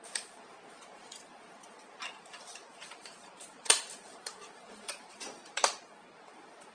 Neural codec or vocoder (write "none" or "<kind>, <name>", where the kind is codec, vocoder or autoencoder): vocoder, BigVGAN v2